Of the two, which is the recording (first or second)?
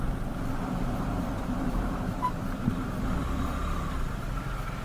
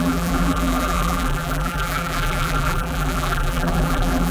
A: first